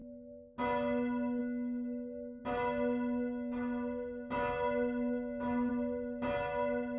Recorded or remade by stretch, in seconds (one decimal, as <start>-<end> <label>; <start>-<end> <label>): 0.0-7.0 recorded